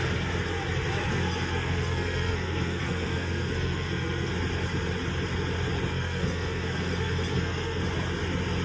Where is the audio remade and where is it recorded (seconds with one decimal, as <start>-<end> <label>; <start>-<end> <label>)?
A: 0.0-1.1 recorded; 1.1-4.3 remade; 4.3-5.9 recorded; 5.9-7.8 remade; 7.8-8.6 recorded